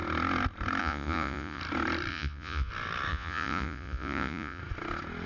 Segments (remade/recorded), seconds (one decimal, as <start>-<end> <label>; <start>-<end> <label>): 0.0-0.8 recorded; 0.8-1.6 remade; 1.6-2.1 recorded; 2.1-2.7 remade; 2.7-3.1 recorded; 3.1-4.6 remade; 4.6-5.3 recorded